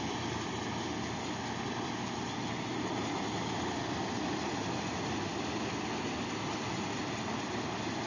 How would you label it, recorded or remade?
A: recorded